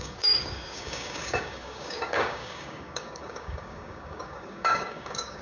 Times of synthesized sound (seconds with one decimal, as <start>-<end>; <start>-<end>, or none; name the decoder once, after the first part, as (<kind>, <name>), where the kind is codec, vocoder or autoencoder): 0.0-5.4 (codec, DAC)